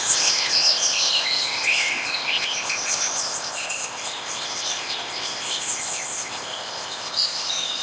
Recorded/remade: remade